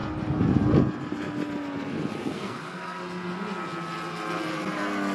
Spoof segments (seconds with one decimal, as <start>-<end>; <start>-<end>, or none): 2.2-3.0